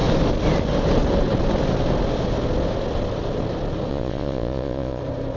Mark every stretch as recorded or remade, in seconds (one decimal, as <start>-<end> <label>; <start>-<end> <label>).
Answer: 0.0-3.9 recorded; 3.9-5.0 remade; 5.0-5.4 recorded